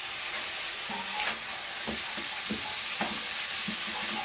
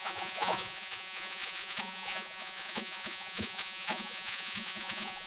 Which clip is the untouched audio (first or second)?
first